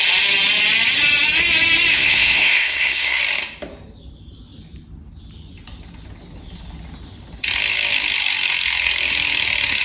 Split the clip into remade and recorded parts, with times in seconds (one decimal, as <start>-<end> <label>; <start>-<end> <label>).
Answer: 0.0-1.9 recorded; 1.9-3.2 remade; 3.2-9.8 recorded